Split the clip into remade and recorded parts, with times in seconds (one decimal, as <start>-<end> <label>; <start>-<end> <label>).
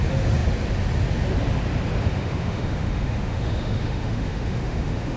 0.0-2.0 recorded; 2.0-5.2 remade